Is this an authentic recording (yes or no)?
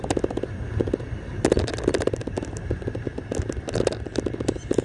yes